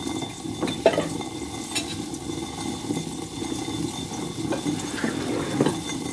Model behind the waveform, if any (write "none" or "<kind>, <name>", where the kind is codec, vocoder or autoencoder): none